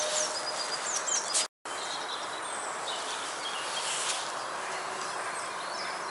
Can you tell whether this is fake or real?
real